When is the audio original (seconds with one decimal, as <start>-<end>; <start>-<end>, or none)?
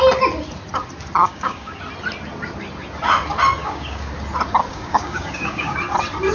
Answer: 0.0-1.2; 1.8-3.6; 4.1-4.7; 5.8-6.3